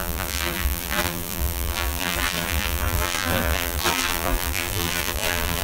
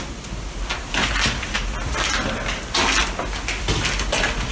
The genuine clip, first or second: second